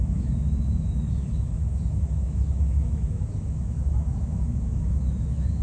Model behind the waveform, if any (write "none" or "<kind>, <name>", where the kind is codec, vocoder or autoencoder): autoencoder, DAC-VAE